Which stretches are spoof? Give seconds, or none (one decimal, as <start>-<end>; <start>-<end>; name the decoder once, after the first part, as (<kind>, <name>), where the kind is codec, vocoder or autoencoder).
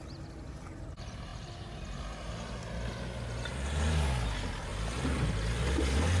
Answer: none